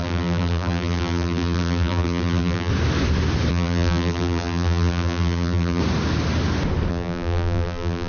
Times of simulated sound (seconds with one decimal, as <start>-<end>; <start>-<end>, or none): 0.0-2.7; 3.5-5.8; 6.9-8.1